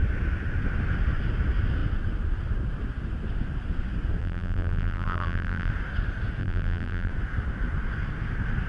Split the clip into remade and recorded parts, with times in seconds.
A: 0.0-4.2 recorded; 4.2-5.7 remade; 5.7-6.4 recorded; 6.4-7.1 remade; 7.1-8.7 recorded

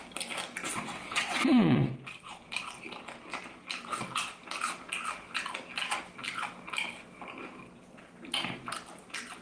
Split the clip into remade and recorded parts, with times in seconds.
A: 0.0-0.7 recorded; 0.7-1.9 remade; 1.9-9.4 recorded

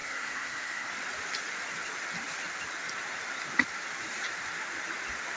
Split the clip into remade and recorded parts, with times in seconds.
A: 0.0-0.9 remade; 0.9-5.4 recorded

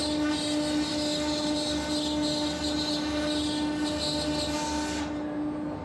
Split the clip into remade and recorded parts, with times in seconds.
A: 0.0-5.8 recorded